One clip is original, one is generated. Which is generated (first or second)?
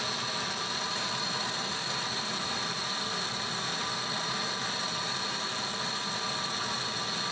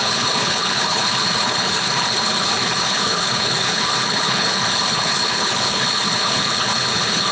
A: second